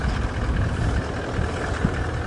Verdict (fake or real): real